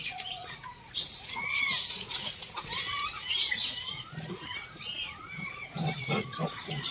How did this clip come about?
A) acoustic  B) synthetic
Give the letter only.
B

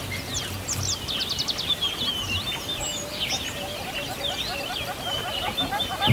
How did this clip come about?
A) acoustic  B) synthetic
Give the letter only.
A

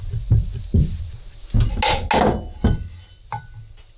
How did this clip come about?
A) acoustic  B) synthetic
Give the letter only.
A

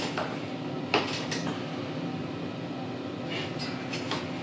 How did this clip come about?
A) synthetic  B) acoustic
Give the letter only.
B